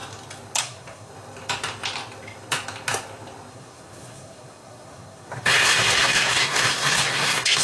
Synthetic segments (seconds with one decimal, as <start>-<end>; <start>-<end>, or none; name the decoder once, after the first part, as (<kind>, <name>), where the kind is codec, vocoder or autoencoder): 0.6-1.1 (codec, SNAC); 3.5-7.6

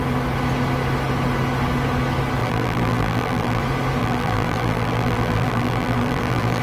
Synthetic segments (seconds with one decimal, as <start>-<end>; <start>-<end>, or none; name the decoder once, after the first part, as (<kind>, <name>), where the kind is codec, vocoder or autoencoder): 2.4-3.6 (vocoder, BigVGAN v2); 4.0-6.6

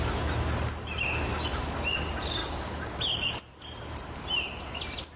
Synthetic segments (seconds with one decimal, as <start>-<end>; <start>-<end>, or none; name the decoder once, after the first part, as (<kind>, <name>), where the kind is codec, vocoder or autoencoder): 2.4-3.0 (codec, DAC)

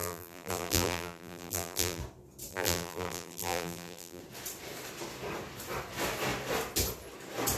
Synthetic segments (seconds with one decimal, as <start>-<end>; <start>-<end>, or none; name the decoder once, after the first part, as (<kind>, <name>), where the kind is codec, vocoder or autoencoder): 0.0-2.0 (vocoder, BigVGAN v2); 2.5-4.2

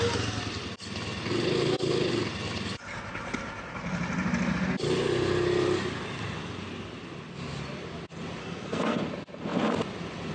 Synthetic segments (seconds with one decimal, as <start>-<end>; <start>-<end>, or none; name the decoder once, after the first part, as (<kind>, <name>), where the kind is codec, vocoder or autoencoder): 8.4-9.0 (codec, SNAC)

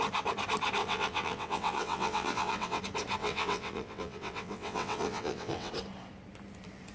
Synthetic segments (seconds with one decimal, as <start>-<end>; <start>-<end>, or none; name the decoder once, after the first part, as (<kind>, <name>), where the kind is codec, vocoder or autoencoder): 0.8-2.8 (vocoder, WaveNeXt); 3.2-5.7

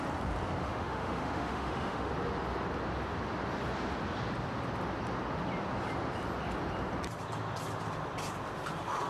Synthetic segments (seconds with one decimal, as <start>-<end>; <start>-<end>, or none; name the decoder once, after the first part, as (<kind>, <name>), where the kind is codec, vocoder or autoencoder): 0.6-2.1 (autoencoder, DAC-VAE)